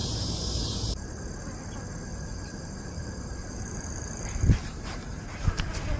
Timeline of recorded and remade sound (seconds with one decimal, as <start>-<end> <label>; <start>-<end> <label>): 0.0-1.1 remade; 1.1-2.1 recorded; 2.1-5.6 remade; 5.6-6.0 recorded